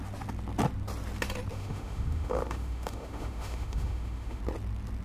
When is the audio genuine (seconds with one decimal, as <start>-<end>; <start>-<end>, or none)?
0.0-1.5; 4.4-5.0